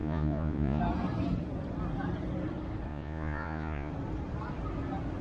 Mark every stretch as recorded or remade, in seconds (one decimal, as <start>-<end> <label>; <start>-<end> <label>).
0.0-0.8 remade; 0.8-2.9 recorded; 2.9-3.9 remade; 3.9-5.2 recorded